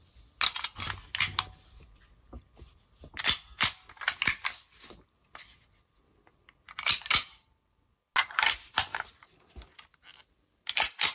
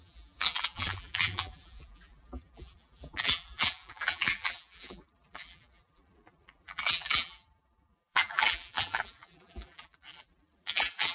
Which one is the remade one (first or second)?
second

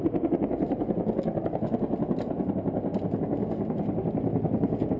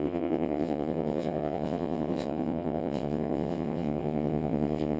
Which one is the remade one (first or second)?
second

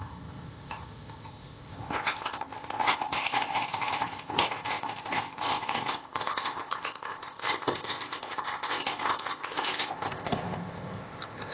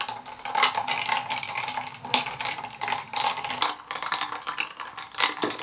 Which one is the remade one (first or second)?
first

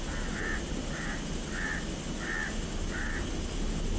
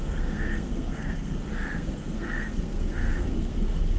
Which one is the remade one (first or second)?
second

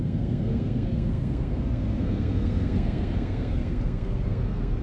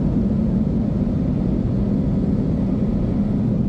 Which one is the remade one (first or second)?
first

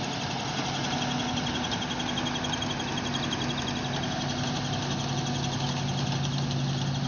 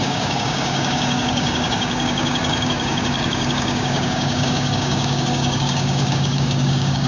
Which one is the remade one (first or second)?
second